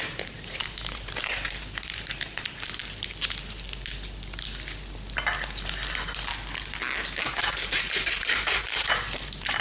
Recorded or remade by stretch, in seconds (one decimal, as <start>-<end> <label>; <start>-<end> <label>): 0.0-2.8 remade; 2.8-7.3 recorded; 7.3-9.6 remade